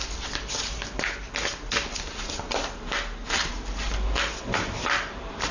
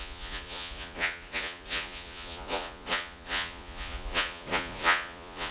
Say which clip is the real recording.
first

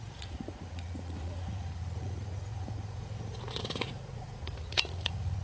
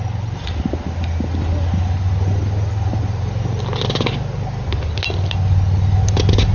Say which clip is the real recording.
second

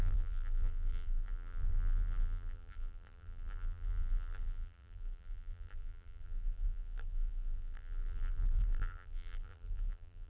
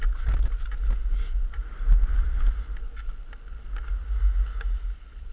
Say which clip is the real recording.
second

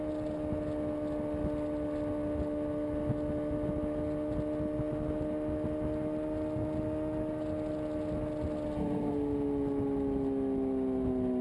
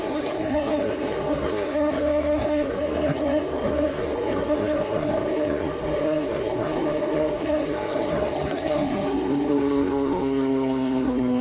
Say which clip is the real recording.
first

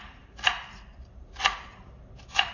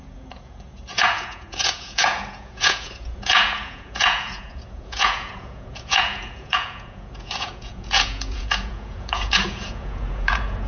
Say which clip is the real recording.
first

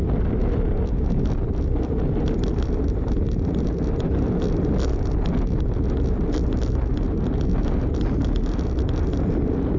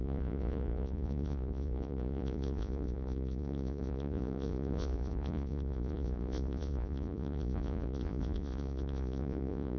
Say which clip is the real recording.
first